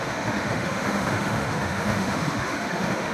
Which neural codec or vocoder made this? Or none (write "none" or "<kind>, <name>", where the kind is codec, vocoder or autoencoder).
autoencoder, DAC-VAE